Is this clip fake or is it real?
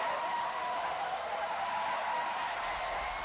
real